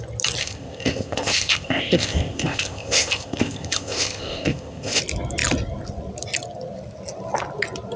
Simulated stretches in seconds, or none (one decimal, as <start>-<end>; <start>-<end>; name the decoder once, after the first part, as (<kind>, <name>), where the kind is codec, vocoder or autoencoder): 0.4-5.0 (codec, ZipCodec)